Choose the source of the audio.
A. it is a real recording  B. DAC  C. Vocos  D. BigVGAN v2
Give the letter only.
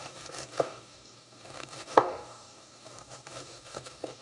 B